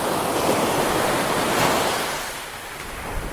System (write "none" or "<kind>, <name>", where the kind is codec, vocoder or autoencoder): none